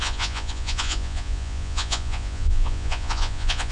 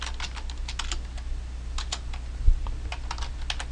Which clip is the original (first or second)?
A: second